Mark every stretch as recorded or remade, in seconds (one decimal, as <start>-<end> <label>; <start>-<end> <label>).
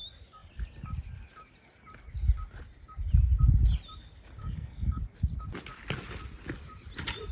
0.0-4.4 recorded; 4.4-5.0 remade; 5.0-7.3 recorded